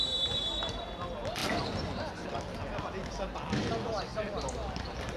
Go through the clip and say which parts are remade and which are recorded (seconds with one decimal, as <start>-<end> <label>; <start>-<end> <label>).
0.0-5.2 recorded